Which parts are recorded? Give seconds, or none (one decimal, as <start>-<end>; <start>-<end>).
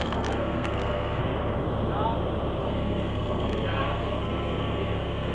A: 1.2-2.6